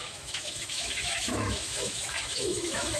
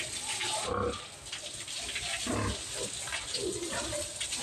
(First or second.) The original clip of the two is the second